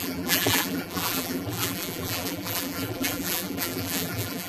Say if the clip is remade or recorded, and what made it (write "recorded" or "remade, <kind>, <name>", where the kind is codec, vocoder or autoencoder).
remade, vocoder, BigVGAN v2